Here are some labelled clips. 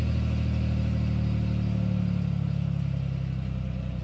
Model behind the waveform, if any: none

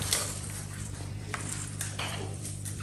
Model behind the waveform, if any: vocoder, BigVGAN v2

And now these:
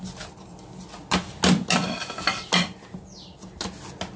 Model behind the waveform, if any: none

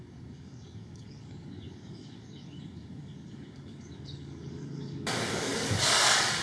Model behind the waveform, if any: codec, DAC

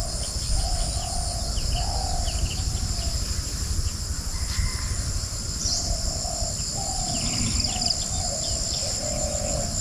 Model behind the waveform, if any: none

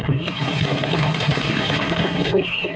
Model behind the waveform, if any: codec, SNAC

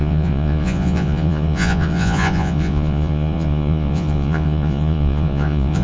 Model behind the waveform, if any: vocoder, Vocos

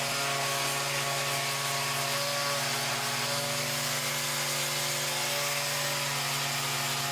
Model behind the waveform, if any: none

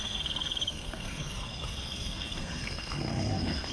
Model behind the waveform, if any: codec, SNAC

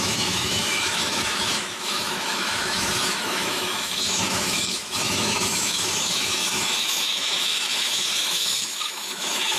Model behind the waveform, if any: autoencoder, DAC-VAE